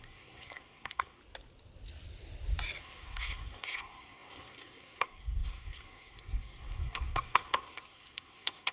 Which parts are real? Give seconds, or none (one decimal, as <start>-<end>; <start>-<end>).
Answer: 1.2-2.8